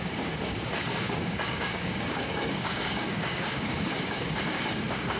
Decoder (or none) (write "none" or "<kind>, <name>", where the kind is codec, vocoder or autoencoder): codec, DAC